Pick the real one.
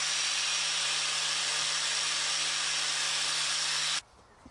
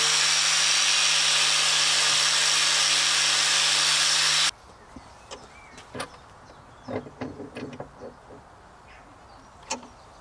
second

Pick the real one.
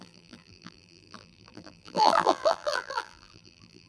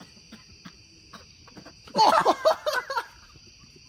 second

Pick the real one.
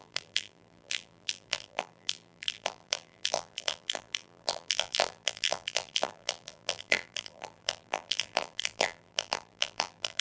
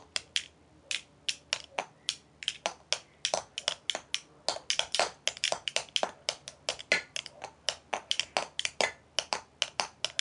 second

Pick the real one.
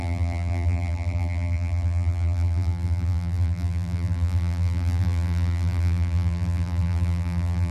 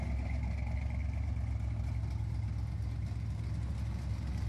second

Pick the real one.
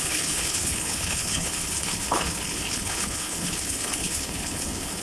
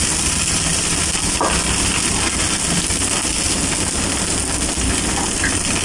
second